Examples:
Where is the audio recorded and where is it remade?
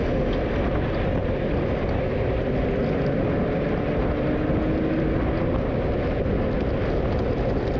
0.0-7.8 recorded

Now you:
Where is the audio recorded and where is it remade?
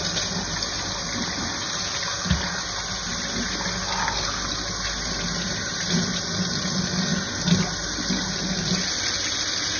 0.0-9.8 recorded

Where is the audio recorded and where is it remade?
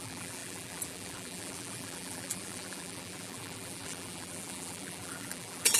0.0-5.8 remade